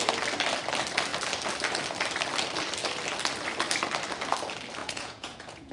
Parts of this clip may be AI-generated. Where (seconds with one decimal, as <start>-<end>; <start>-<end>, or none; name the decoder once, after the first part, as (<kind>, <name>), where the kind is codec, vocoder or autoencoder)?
4.8-5.7 (vocoder, Vocos)